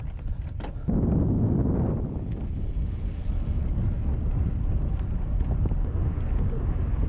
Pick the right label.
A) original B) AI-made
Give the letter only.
A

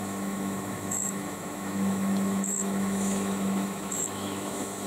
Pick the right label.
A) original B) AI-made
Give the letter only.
B